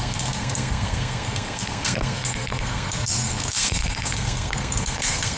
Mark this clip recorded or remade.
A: remade